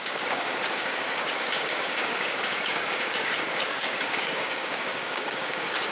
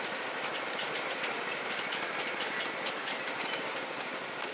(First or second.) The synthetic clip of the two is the first